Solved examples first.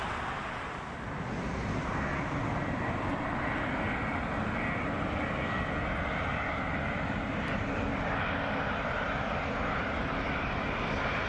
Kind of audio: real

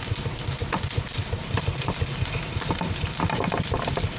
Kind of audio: fake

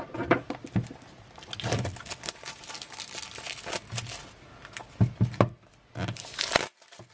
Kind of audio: real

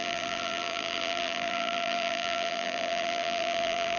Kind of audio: fake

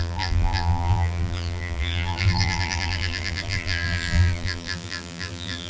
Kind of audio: fake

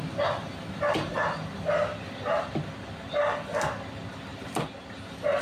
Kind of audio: real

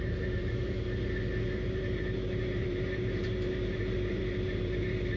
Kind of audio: fake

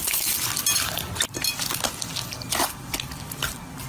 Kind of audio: real